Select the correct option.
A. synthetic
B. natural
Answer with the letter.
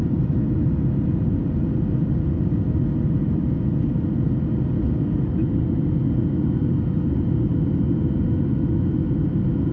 B